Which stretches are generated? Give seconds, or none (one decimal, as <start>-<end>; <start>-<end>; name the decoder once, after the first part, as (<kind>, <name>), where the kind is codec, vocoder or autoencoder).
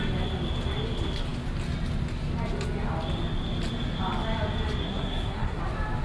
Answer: 4.8-5.6 (codec, SNAC)